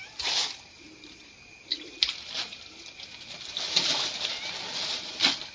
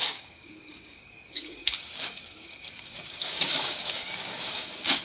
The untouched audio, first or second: first